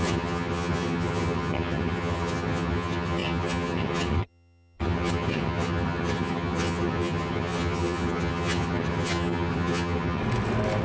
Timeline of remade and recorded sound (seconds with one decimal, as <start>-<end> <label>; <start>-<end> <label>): 0.0-10.2 remade; 10.2-10.8 recorded